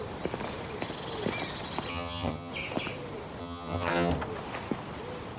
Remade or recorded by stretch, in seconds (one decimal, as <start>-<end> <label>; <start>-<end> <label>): 0.0-1.9 recorded; 1.9-2.5 remade; 2.5-3.4 recorded; 3.4-4.1 remade; 4.1-5.4 recorded